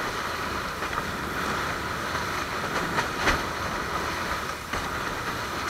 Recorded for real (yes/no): yes